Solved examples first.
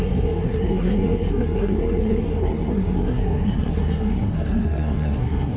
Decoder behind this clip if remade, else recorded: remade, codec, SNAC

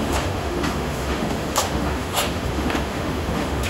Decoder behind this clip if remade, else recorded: remade, autoencoder, DAC-VAE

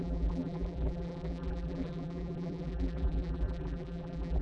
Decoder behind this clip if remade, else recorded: remade, vocoder, BigVGAN v2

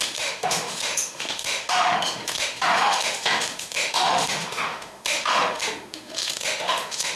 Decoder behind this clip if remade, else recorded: remade, autoencoder, DAC-VAE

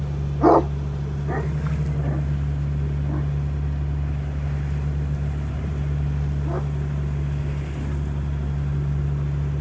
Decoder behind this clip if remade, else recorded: recorded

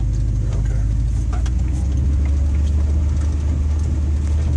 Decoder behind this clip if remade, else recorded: recorded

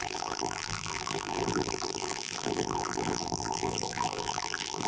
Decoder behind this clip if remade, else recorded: remade, vocoder, BigVGAN v2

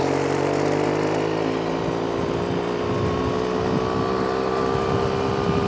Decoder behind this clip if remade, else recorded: recorded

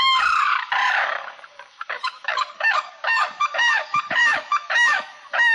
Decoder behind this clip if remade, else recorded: remade, codec, DAC